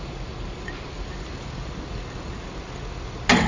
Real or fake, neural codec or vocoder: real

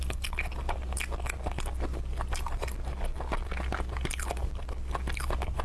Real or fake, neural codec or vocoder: real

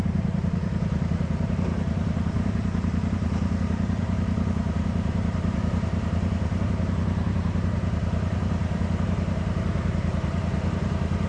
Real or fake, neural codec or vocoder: fake, vocoder, BigVGAN v2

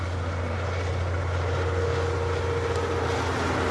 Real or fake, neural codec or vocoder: real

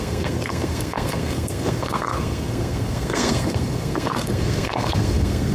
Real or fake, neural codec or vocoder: fake, codec, SNAC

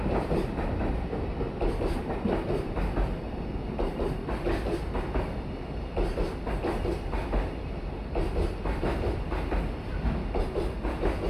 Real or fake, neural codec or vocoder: real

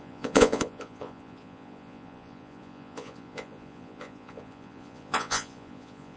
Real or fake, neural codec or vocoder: fake, vocoder, Vocos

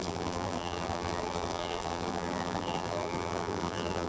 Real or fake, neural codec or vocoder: fake, vocoder, BigVGAN v2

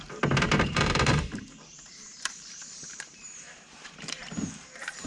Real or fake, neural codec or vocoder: fake, vocoder, BigVGAN v2